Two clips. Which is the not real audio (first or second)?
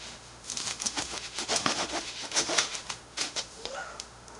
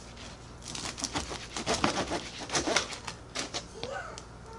first